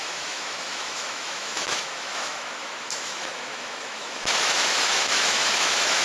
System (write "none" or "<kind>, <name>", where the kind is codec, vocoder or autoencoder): autoencoder, DAC-VAE